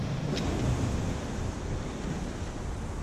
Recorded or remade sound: recorded